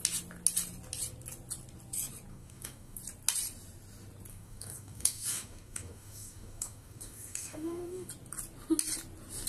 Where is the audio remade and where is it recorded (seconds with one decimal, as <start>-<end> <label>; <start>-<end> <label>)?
0.0-2.3 recorded; 2.3-3.0 remade; 3.0-4.3 recorded; 4.3-8.1 remade; 8.1-9.5 recorded